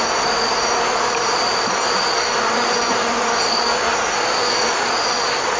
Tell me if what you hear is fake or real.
real